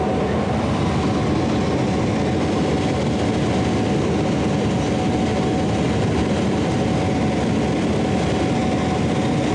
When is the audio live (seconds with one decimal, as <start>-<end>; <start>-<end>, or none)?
0.0-9.5